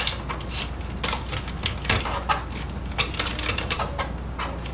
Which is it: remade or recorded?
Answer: recorded